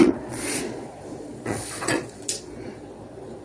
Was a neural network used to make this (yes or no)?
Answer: yes